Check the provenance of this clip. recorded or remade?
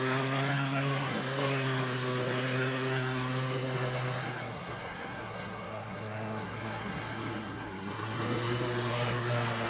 remade